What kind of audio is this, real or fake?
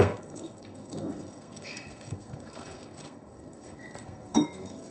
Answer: fake